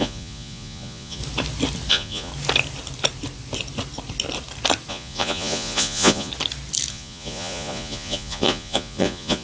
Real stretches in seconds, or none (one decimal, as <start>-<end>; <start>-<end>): 1.2-1.9; 2.3-4.9; 6.3-6.9